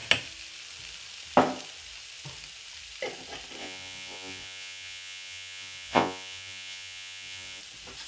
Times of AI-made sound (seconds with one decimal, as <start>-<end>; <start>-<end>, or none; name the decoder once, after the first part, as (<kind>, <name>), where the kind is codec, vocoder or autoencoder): 3.6-7.6 (vocoder, Vocos)